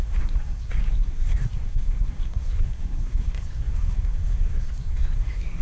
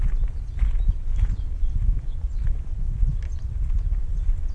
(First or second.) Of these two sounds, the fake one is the first